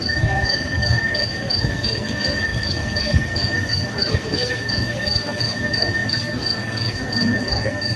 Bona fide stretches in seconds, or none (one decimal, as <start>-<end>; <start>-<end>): none